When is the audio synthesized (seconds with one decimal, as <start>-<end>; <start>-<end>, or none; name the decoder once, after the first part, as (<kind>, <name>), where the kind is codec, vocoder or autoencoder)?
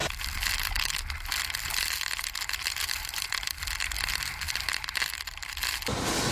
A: none